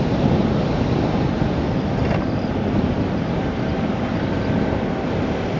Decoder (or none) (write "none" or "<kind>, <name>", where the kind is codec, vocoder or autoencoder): none